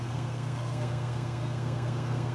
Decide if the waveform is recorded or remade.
remade